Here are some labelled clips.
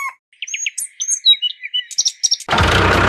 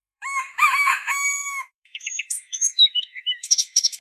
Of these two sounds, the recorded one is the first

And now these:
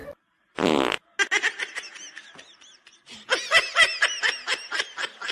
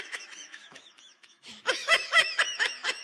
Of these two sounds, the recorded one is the first